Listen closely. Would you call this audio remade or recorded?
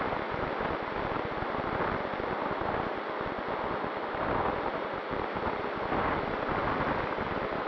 recorded